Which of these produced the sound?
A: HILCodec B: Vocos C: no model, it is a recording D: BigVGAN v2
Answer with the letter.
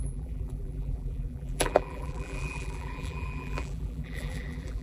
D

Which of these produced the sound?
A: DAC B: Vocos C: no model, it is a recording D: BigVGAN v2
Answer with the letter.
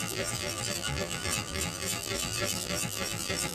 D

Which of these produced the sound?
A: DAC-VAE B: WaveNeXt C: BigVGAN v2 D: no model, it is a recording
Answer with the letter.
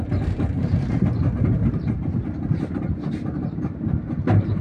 C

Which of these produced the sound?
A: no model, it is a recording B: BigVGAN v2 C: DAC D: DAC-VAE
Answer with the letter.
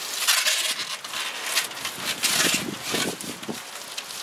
A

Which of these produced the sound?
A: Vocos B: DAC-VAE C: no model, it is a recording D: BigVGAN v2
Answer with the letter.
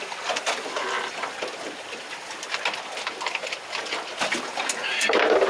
C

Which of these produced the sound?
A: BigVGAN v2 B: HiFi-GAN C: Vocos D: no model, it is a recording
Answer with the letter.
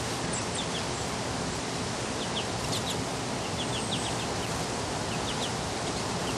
D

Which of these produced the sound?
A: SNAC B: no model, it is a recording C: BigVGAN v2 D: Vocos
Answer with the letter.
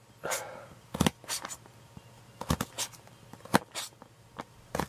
B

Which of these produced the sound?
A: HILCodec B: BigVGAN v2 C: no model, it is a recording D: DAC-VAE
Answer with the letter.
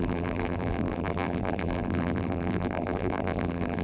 B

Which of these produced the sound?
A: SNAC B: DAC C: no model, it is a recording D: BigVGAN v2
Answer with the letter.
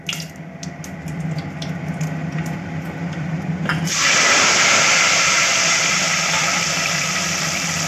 D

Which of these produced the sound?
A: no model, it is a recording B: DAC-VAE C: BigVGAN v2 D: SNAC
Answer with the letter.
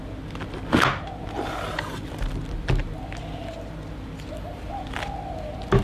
A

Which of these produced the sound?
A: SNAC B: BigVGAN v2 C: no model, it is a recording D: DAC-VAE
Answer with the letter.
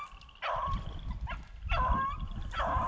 C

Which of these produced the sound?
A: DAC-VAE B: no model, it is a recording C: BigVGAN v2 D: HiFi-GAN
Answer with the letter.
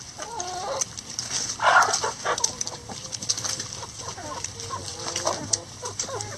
B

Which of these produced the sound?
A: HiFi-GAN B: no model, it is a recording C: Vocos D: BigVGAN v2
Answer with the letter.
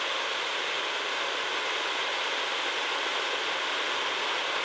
B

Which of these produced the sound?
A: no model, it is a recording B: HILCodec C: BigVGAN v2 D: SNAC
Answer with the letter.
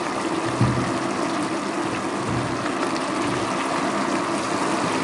A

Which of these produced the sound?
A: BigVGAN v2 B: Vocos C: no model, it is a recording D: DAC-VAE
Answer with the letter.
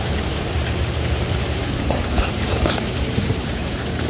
A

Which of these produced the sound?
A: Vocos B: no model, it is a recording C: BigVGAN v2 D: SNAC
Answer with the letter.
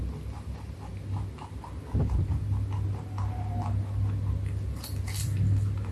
B